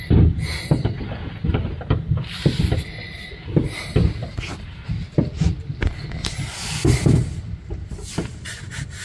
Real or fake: real